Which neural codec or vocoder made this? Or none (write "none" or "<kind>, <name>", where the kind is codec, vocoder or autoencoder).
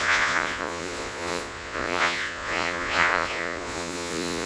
vocoder, Vocos